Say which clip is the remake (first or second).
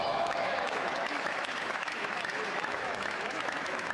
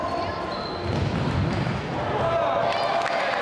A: first